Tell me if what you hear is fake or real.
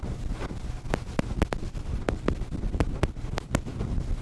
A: real